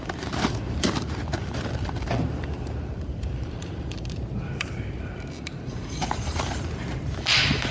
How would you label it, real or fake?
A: fake